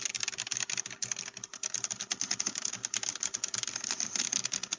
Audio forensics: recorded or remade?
recorded